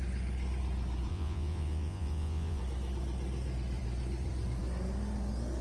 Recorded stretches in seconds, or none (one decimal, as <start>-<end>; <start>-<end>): 0.0-1.1; 2.6-5.6